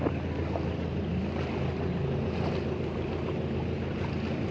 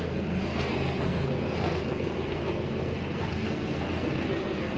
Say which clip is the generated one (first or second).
second